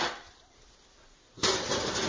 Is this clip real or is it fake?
real